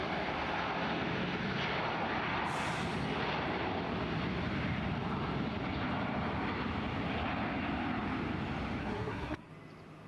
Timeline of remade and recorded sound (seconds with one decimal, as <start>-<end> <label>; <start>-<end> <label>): 0.0-8.8 recorded; 8.8-9.5 remade; 9.5-10.1 recorded